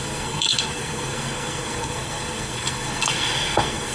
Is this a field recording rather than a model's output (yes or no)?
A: no